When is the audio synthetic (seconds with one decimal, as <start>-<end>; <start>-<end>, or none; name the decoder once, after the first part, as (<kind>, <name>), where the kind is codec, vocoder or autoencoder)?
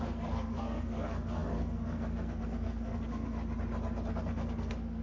0.0-3.4 (codec, SNAC); 4.1-5.0